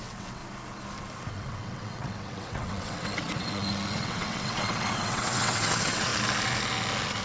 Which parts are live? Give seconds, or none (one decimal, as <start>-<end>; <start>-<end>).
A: 0.4-1.3; 6.1-7.2